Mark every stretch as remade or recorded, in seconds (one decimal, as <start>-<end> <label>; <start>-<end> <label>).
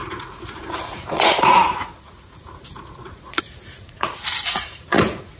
0.0-5.4 remade